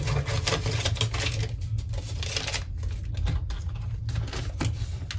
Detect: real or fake real